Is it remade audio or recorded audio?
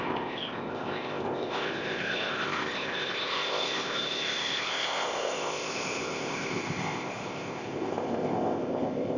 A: remade